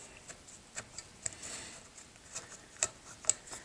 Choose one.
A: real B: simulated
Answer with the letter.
A